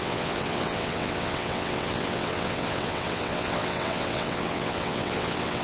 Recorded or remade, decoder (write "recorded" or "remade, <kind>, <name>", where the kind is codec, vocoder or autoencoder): remade, vocoder, WaveNeXt